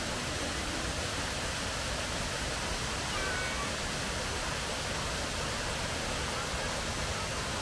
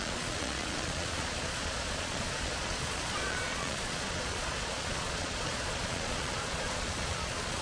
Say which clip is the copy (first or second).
second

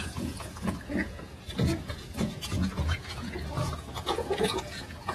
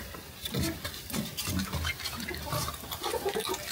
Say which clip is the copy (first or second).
first